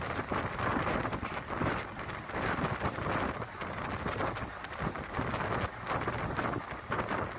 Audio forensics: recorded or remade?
recorded